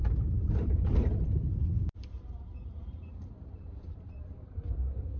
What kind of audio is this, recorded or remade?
remade